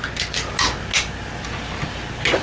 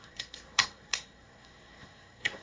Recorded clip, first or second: first